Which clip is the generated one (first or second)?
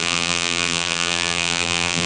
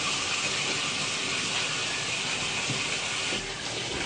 first